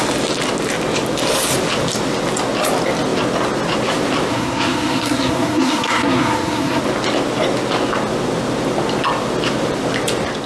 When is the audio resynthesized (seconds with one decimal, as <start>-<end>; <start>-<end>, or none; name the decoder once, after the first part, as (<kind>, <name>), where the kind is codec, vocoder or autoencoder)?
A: 4.3-6.8 (codec, SNAC)